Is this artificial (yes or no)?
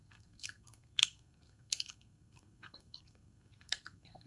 yes